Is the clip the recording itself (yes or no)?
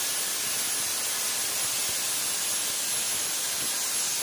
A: yes